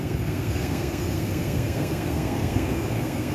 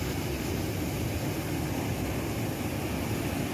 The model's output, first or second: first